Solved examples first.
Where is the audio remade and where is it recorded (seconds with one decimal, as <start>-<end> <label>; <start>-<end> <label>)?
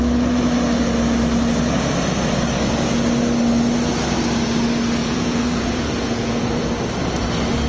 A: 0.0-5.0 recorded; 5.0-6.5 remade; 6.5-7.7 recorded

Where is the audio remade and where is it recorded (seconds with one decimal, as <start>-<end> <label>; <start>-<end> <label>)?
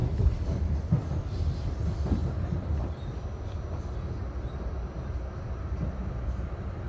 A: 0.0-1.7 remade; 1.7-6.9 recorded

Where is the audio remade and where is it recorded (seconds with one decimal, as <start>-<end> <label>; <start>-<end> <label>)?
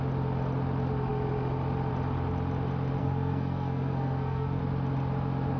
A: 0.0-3.0 recorded; 3.0-4.6 remade; 4.6-5.6 recorded